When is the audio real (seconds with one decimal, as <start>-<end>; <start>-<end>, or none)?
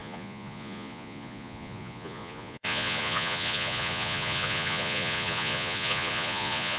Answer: none